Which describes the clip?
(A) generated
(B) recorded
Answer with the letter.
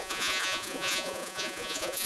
A